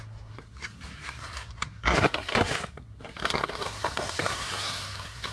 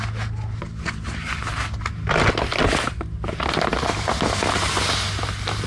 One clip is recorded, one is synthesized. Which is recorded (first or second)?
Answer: second